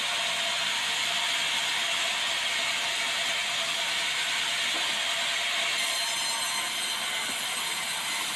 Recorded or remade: recorded